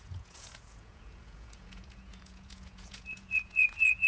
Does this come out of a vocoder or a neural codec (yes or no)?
yes